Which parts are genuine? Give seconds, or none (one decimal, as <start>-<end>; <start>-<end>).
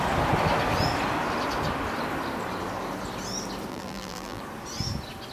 0.0-3.7; 4.4-5.3